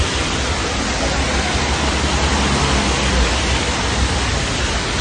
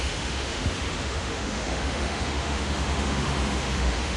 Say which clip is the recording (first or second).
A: first